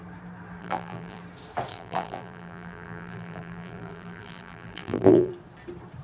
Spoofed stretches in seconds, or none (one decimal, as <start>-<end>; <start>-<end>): 0.6-1.2; 1.7-5.3